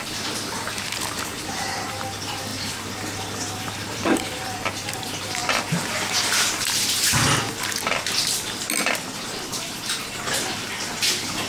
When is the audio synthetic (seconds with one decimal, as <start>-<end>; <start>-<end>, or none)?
0.0-5.4; 6.6-11.5